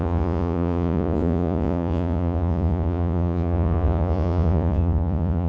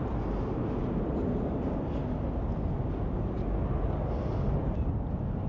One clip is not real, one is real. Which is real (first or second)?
second